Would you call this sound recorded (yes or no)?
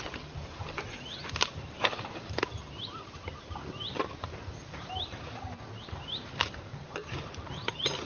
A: no